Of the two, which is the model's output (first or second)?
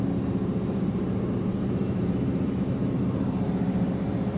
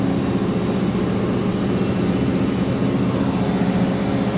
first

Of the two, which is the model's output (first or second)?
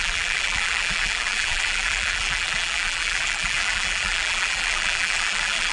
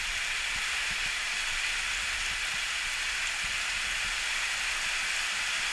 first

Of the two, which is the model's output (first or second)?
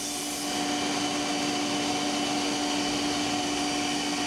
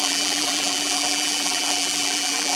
second